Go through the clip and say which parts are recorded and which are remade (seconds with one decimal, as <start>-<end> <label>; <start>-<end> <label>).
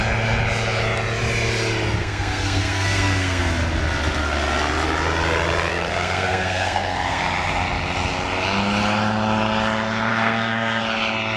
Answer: 0.0-2.0 recorded; 2.0-3.5 remade; 3.5-5.7 recorded; 5.7-7.2 remade; 7.2-10.1 recorded; 10.1-10.8 remade; 10.8-11.4 recorded